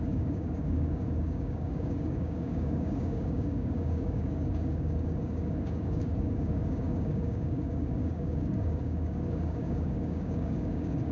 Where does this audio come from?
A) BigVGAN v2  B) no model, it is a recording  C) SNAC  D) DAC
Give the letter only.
D